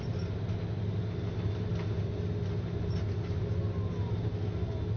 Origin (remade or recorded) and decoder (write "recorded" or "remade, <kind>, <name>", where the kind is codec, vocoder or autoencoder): recorded